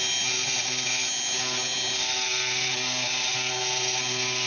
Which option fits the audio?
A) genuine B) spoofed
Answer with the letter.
A